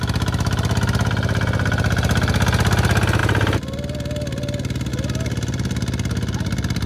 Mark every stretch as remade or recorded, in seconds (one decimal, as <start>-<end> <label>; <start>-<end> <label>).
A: 0.0-6.9 recorded